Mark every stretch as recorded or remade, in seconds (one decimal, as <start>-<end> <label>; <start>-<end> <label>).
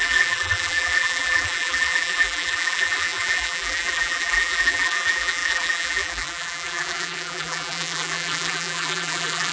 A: 0.0-9.5 remade